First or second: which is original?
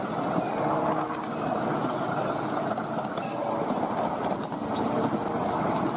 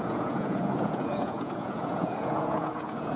first